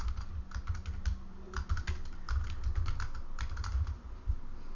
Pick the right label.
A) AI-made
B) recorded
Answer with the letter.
B